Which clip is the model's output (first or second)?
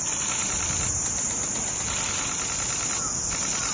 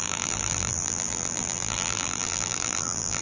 second